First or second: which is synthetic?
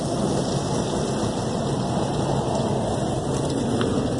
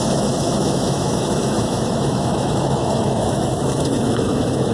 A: second